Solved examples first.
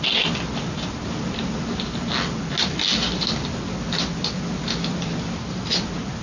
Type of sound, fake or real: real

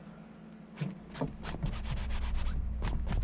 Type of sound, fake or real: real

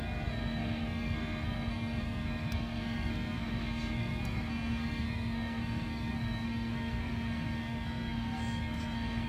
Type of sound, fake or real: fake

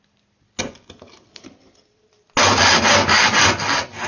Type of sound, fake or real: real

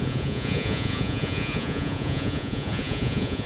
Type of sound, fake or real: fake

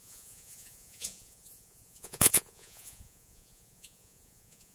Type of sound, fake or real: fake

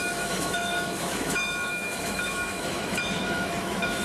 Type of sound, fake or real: fake